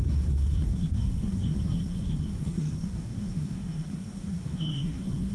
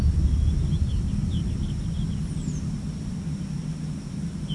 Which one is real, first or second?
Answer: second